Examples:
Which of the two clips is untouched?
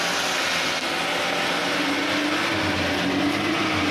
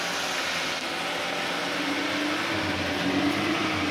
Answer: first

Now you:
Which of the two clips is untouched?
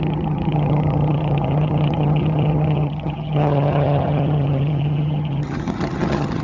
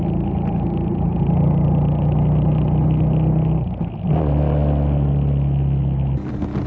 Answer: second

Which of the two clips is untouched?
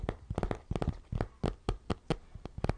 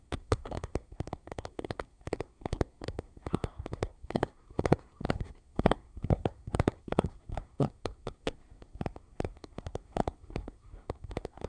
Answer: first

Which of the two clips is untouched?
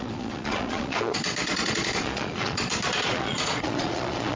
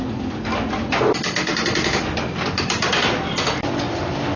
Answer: second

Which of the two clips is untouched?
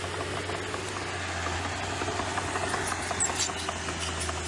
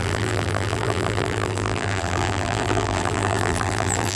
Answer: first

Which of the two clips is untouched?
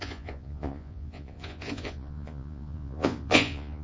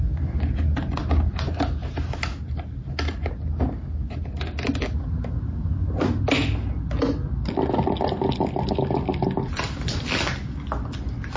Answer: second